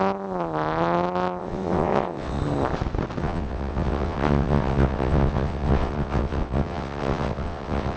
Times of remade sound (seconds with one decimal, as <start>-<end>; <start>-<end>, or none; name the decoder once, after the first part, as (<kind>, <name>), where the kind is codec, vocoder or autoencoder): 1.4-2.4 (vocoder, WaveNeXt); 3.2-8.0